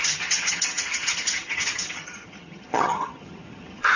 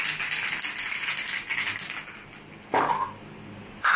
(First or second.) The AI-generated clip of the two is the first